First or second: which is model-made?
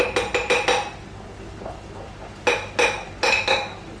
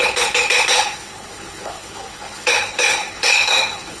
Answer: second